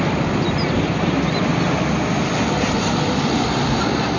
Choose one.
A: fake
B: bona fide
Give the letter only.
B